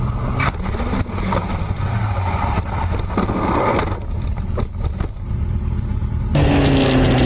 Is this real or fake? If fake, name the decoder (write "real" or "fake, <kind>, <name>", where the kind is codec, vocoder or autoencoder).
real